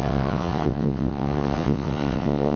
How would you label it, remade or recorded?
remade